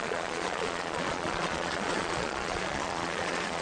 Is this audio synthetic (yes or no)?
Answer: yes